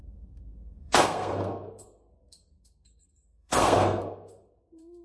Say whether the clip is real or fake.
fake